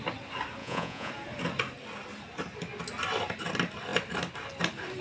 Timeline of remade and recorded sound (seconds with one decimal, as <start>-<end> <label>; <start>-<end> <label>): 0.0-0.6 recorded; 0.6-1.1 remade; 1.1-5.0 recorded